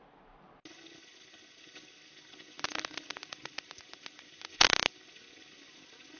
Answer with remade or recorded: recorded